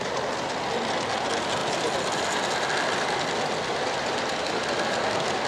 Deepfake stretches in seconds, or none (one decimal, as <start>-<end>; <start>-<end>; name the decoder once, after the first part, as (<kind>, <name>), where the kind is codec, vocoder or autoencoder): none